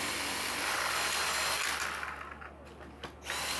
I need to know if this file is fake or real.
real